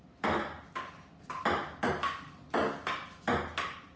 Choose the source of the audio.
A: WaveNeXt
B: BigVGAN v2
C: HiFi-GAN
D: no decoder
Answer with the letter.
D